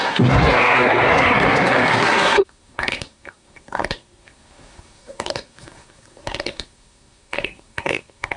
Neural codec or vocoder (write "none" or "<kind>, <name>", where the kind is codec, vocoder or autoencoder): codec, SNAC